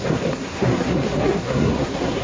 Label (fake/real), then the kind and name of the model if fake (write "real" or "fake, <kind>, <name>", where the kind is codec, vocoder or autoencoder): fake, codec, SNAC